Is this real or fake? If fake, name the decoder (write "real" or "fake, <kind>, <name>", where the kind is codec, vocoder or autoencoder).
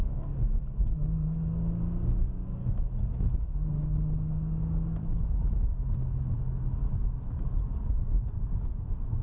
real